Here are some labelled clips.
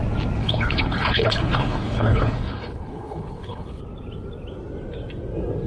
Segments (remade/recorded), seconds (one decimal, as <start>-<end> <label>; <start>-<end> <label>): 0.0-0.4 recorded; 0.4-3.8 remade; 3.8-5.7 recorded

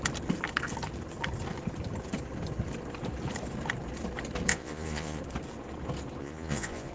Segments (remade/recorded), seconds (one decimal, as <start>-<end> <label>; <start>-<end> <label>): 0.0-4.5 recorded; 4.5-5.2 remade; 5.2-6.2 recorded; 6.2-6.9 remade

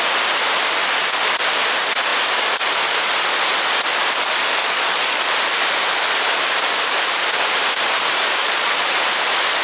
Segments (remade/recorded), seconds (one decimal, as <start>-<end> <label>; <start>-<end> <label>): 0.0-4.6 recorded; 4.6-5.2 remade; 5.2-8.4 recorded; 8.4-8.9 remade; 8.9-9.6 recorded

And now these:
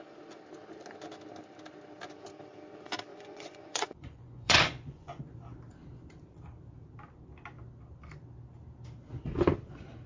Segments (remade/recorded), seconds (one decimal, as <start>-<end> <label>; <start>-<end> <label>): 0.0-3.1 recorded; 3.1-5.2 remade; 5.2-10.1 recorded

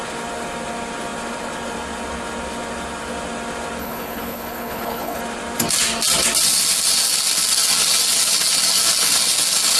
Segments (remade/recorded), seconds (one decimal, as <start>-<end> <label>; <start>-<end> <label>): 0.0-3.8 recorded; 3.8-5.2 remade; 5.2-9.8 recorded